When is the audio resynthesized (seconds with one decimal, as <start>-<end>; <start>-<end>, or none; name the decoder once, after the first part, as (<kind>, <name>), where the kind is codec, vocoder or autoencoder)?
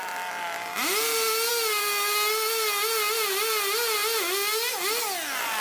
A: none